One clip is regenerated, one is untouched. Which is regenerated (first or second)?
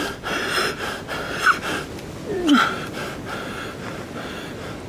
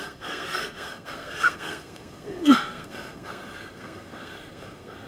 second